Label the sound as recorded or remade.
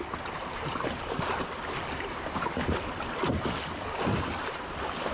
recorded